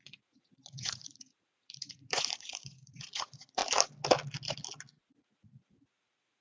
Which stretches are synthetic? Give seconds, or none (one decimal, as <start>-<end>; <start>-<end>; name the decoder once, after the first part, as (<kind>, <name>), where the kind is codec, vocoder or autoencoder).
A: 0.0-3.6 (vocoder, Vocos); 5.1-6.4

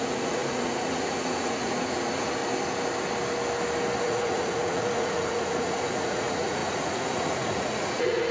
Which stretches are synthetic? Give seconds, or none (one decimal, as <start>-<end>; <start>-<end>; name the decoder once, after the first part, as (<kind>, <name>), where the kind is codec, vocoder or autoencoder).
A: 0.0-2.4 (vocoder, Vocos); 4.0-8.3